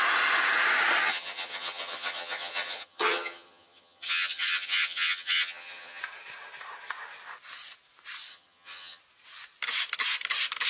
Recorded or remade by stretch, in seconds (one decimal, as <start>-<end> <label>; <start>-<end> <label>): 0.0-1.0 recorded; 1.0-6.0 remade; 6.0-8.3 recorded; 8.3-9.0 remade; 9.0-10.7 recorded